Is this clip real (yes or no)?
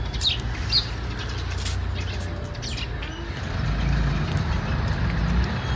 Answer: yes